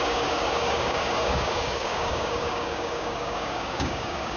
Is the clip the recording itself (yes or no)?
no